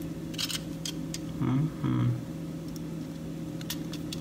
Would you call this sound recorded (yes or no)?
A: yes